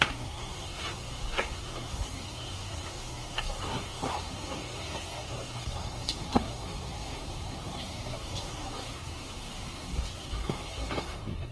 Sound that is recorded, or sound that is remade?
remade